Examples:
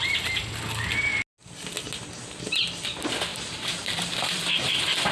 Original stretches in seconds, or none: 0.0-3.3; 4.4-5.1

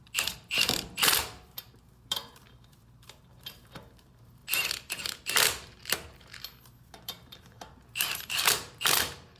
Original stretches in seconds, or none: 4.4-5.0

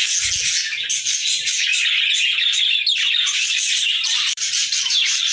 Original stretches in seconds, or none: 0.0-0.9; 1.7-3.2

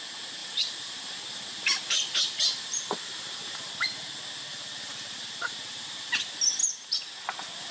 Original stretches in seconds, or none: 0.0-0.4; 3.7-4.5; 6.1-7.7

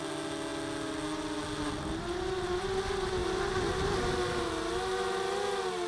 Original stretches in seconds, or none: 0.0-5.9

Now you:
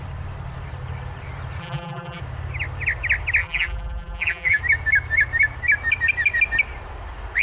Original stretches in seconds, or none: 0.0-1.6; 2.2-3.4; 4.6-7.4